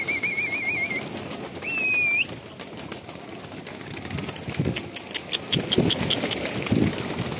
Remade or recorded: recorded